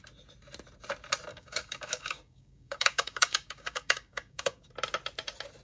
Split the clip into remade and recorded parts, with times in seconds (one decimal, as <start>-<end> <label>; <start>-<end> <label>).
0.0-1.3 recorded; 1.3-4.7 remade; 4.7-5.6 recorded